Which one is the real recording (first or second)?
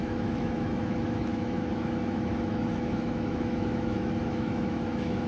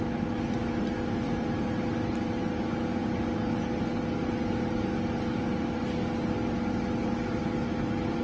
second